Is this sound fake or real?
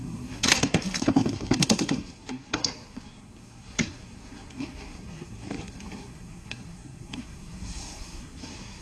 fake